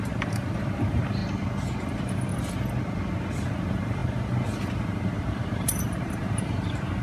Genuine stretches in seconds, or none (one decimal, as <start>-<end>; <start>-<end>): 1.2-1.8; 2.3-3.3